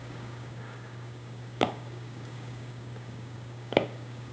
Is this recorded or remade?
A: remade